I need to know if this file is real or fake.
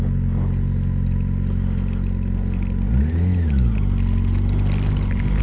real